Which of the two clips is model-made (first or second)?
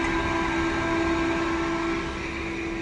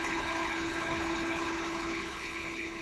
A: second